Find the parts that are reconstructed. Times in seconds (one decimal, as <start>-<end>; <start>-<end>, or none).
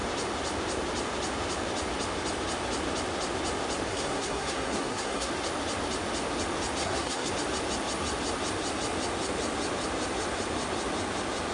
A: 3.9-5.3; 6.8-7.3